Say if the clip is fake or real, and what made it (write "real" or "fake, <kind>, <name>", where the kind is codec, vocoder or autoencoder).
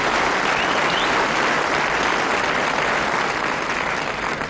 real